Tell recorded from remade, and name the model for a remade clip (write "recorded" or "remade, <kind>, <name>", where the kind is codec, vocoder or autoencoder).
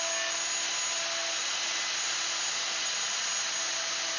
recorded